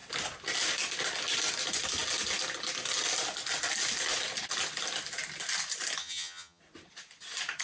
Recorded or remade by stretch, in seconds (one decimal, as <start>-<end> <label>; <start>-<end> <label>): 0.0-6.0 recorded; 6.0-6.6 remade; 6.6-7.6 recorded